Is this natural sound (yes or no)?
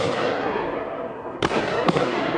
no